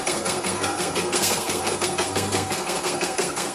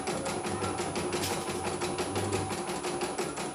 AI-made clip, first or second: first